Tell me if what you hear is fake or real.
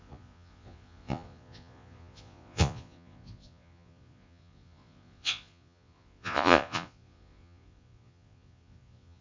fake